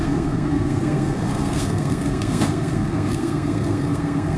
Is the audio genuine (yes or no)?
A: no